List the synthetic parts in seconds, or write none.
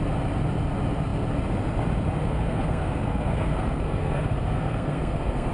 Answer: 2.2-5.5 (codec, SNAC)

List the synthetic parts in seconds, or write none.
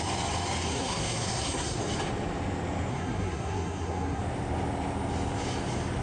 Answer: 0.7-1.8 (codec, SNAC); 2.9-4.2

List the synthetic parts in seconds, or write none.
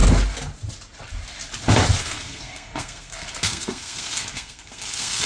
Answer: 2.0-5.3 (codec, SNAC)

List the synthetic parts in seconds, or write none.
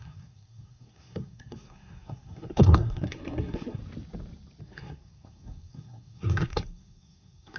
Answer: 0.0-3.8 (codec, SNAC); 4.6-7.6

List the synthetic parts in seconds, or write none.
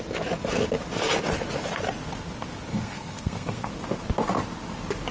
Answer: 2.7-3.7 (codec, SNAC)